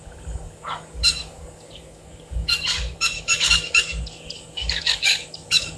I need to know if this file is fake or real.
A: fake